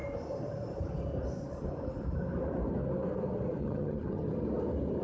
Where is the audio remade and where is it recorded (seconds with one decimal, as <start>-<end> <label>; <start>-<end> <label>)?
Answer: 0.0-3.6 recorded; 3.6-4.3 remade; 4.3-5.0 recorded